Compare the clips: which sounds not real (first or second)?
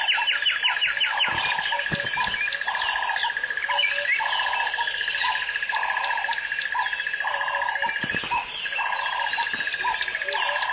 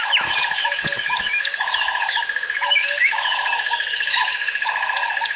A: second